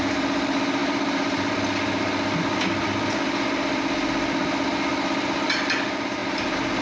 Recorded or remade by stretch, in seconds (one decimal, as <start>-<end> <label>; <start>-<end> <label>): 0.0-0.8 recorded; 0.8-1.6 remade; 1.6-6.8 recorded